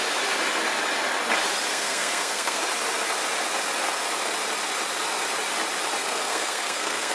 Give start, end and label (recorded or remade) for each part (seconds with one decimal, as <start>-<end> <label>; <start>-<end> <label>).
0.0-1.7 recorded; 1.7-2.6 remade; 2.6-6.0 recorded; 6.0-7.1 remade